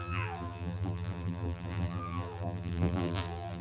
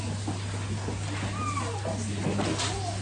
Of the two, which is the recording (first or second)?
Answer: second